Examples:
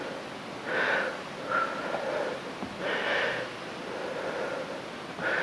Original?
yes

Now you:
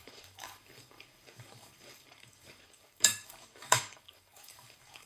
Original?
no